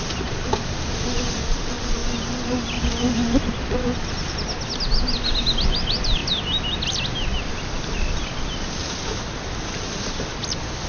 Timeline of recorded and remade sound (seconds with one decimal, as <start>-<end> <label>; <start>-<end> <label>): 0.0-10.9 recorded